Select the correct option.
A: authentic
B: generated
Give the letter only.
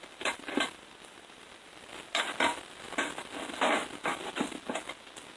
A